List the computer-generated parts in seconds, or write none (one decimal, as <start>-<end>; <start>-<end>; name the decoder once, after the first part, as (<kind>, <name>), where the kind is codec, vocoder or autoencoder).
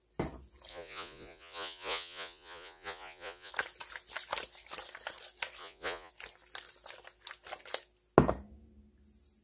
0.7-3.5 (vocoder, Vocos); 5.6-6.1